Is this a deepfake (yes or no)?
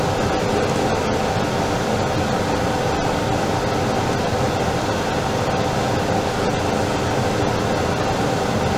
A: no